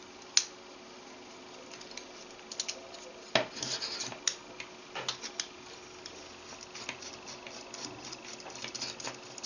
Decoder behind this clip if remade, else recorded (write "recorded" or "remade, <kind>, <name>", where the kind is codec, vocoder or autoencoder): recorded